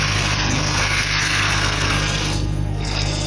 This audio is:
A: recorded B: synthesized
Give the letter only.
B